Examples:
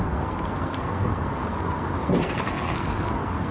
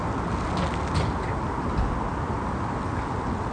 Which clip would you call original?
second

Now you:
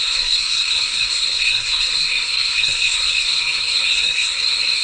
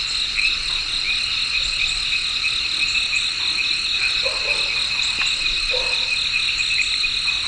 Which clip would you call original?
second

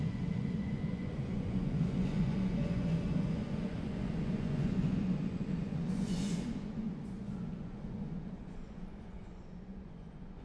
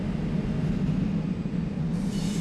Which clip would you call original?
second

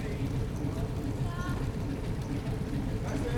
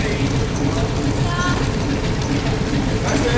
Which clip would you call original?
second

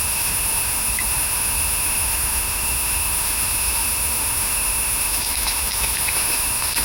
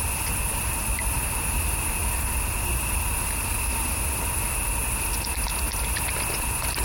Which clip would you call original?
second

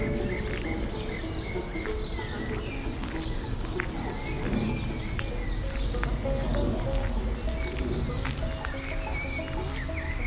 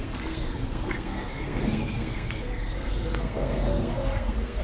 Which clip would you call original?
first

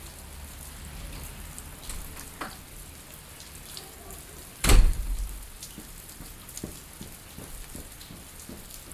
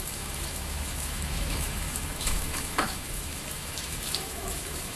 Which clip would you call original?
first